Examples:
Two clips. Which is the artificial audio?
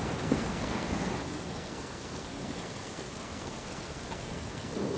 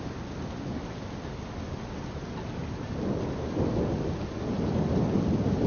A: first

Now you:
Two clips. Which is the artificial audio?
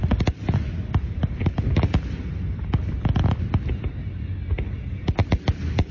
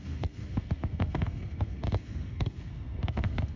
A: second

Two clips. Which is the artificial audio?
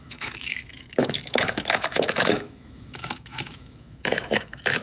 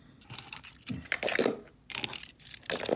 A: first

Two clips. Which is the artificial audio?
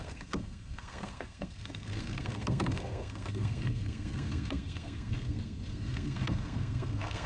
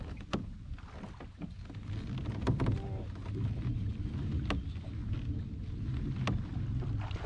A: first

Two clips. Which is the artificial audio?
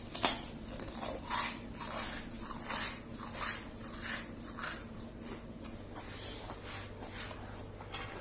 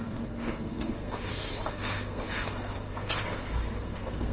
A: second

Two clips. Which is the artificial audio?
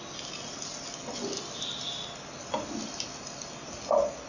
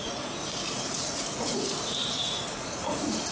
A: second